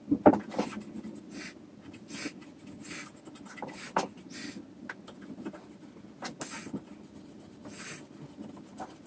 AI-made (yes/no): no